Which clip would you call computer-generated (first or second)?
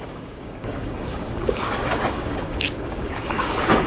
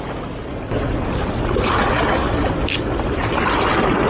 first